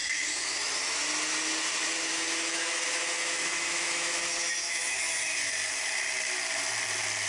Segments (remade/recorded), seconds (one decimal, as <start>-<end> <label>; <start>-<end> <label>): 0.0-1.0 remade; 1.0-2.1 recorded; 2.1-5.5 remade; 5.5-7.3 recorded